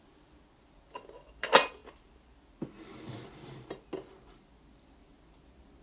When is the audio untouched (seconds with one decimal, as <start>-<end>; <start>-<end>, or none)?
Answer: 0.0-5.8